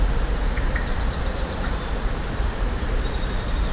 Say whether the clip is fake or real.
fake